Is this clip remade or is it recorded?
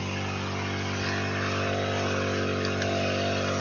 recorded